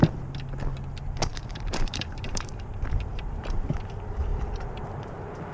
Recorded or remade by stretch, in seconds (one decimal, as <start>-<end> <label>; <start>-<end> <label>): 0.0-1.3 recorded; 1.3-2.7 remade; 2.7-3.1 recorded; 3.1-3.7 remade; 3.7-4.3 recorded; 4.3-4.8 remade; 4.8-5.5 recorded